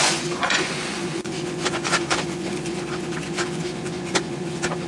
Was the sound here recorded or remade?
remade